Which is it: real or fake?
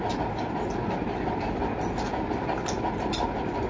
real